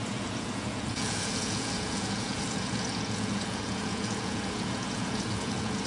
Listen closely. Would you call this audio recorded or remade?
remade